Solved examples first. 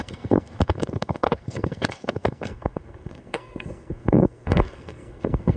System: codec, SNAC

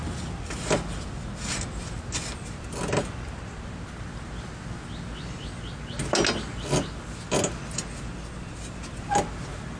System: none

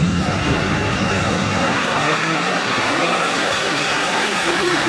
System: codec, SNAC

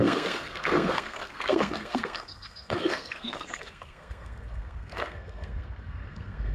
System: codec, SNAC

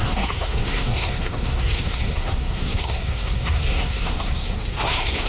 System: codec, SNAC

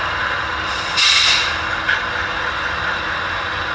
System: none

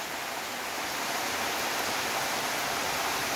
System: none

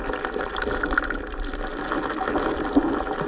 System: none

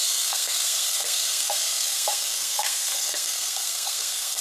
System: codec, SNAC